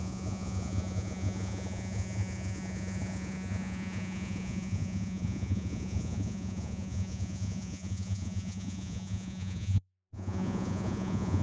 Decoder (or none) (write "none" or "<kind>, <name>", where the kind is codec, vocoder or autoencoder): vocoder, Vocos